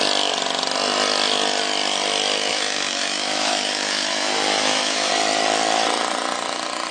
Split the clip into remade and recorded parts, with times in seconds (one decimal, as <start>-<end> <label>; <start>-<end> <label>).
0.0-2.5 recorded; 2.5-5.1 remade; 5.1-6.9 recorded